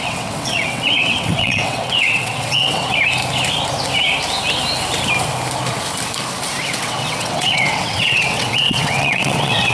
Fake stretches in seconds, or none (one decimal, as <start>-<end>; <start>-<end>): 0.0-2.9; 6.6-9.7

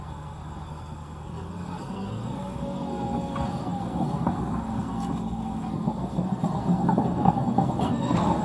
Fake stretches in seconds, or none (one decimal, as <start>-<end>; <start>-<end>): 0.0-8.4

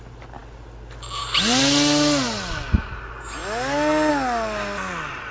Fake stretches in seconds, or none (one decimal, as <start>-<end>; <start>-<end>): none